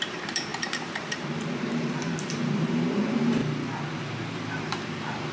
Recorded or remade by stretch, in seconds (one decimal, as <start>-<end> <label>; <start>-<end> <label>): 0.0-3.4 remade; 3.4-4.5 recorded; 4.5-5.3 remade